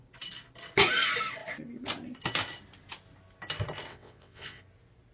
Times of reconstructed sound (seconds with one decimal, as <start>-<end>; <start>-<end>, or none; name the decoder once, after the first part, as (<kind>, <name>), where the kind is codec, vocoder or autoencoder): 3.9-4.6 (vocoder, WaveNeXt)